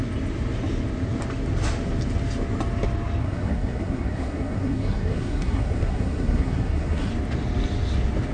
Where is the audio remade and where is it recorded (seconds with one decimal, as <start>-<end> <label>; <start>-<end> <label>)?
0.0-3.2 recorded; 3.2-7.1 remade; 7.1-8.3 recorded